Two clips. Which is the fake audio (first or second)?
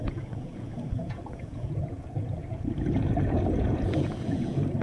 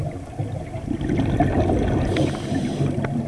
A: first